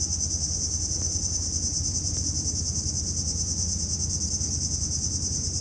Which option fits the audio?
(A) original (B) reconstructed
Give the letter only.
A